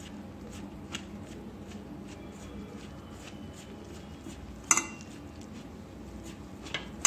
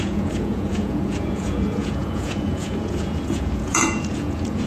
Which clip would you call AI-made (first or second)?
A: second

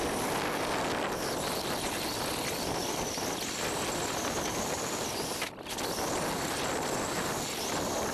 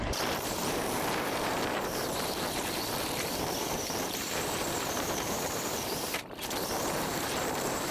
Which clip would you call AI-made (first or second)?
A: second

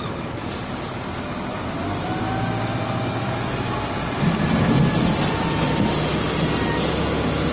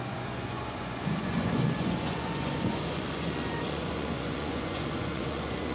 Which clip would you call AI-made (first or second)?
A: second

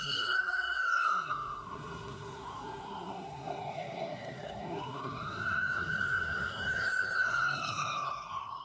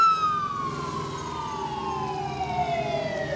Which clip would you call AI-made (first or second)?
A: first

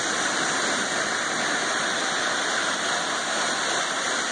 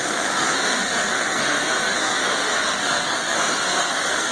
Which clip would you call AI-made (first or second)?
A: second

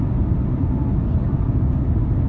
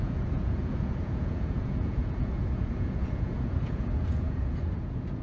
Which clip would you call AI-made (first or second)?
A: second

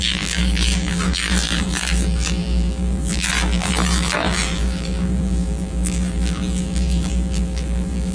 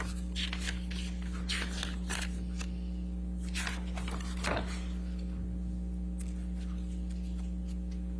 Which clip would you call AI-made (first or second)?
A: first